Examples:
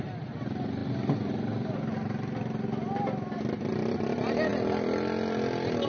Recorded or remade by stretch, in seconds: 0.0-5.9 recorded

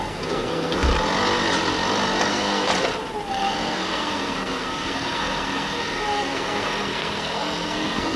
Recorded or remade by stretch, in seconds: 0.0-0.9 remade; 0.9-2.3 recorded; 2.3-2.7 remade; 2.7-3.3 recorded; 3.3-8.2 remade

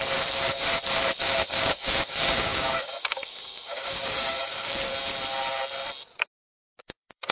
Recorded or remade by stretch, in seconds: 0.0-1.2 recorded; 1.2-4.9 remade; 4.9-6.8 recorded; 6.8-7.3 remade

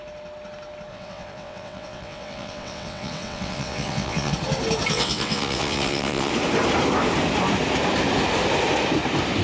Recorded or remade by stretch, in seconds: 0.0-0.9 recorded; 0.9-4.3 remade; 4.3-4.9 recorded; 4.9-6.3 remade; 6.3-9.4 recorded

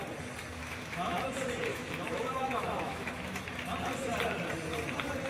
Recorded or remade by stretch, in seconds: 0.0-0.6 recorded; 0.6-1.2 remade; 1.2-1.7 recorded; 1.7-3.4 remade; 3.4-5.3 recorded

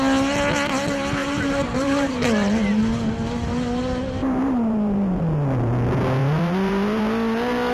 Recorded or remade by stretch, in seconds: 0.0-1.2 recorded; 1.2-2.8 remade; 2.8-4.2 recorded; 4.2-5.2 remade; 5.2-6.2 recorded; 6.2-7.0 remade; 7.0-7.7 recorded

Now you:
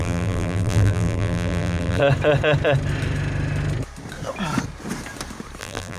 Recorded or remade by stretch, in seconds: 0.0-2.0 remade; 2.0-5.6 recorded; 5.6-6.0 remade